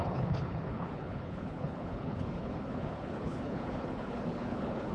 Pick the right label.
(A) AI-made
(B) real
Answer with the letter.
A